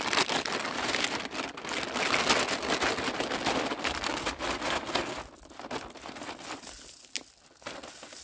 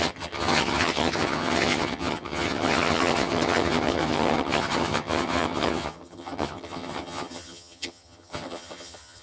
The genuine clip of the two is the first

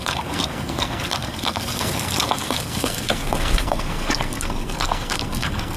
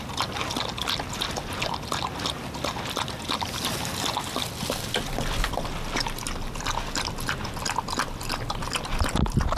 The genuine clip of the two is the second